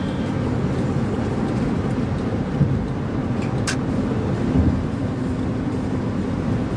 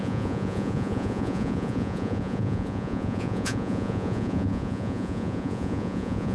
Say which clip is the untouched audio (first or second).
first